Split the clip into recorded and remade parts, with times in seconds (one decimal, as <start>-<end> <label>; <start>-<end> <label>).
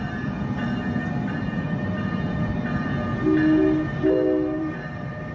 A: 0.0-2.9 remade; 2.9-4.6 recorded; 4.6-5.3 remade